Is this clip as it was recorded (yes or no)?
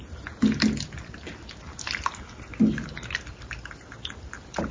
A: yes